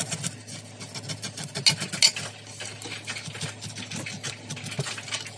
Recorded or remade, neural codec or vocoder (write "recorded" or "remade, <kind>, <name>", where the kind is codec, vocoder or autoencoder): recorded